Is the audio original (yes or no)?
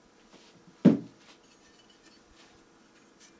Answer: yes